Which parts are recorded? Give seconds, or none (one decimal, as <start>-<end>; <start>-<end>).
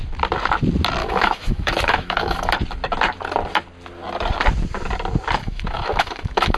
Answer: 0.0-1.0; 2.5-5.4